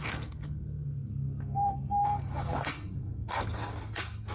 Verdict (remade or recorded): remade